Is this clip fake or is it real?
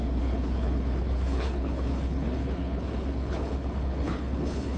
fake